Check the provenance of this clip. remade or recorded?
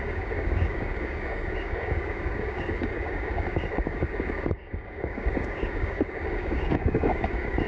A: remade